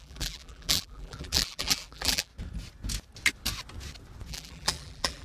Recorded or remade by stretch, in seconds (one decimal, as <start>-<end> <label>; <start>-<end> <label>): 0.0-2.3 remade; 2.3-4.3 recorded; 4.3-5.2 remade